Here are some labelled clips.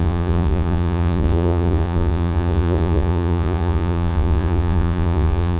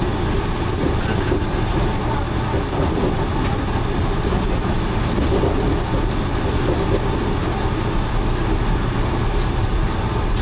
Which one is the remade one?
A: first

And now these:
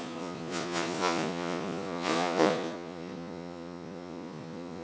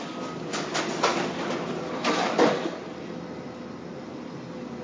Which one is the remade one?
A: first